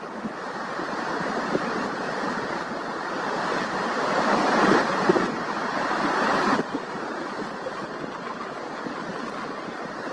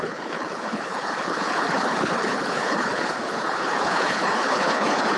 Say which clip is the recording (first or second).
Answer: first